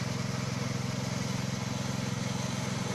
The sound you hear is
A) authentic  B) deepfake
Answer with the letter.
A